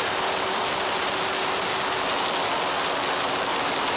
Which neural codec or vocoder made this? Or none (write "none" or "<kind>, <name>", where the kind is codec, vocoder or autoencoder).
none